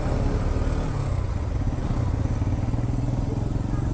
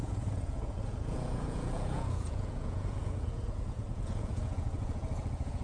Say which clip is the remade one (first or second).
second